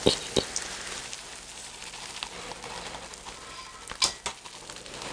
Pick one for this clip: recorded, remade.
recorded